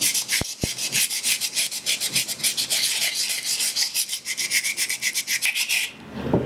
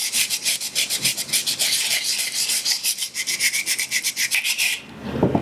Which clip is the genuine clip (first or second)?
first